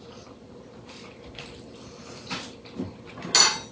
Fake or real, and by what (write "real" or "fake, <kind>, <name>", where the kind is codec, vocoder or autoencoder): real